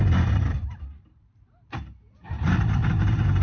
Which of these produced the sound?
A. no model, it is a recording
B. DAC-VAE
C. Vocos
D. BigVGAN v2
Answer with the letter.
D